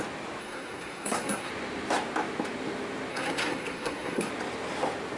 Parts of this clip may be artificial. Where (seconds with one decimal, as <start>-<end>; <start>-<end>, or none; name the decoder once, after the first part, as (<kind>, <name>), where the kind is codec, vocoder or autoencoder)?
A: 0.4-1.5 (codec, SNAC); 3.1-4.3